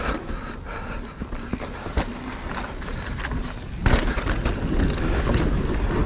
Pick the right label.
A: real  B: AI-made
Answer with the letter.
A